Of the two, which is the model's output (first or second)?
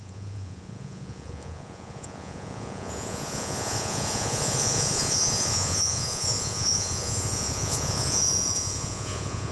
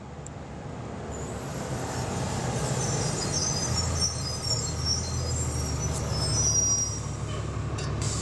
first